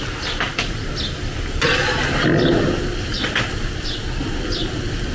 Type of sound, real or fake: real